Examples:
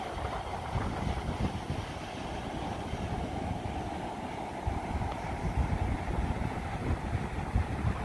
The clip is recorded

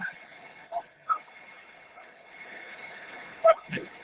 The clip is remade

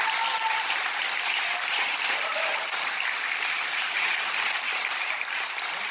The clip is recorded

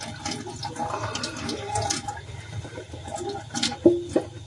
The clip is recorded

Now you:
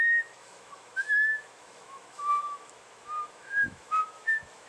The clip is remade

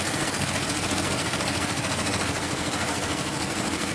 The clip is remade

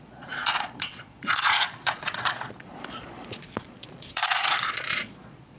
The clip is remade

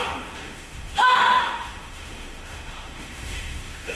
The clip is remade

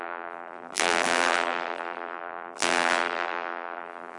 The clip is remade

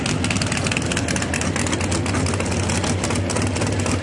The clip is recorded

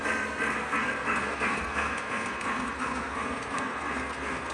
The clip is remade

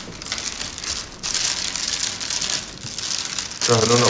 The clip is remade